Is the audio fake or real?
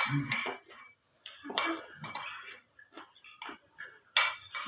real